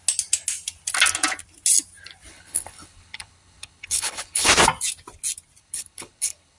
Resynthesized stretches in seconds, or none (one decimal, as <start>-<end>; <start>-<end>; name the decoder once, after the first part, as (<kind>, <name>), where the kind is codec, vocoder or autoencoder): 2.3-4.5 (codec, HILCodec); 5.6-6.6